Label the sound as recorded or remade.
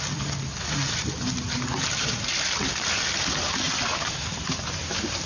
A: recorded